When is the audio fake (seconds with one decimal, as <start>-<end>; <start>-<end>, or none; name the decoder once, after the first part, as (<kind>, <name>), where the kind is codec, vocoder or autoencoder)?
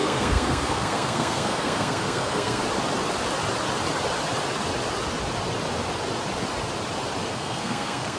0.0-2.6 (codec, SNAC); 7.3-8.2